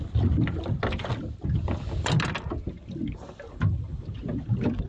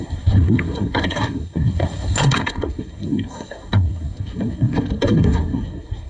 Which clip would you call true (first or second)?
first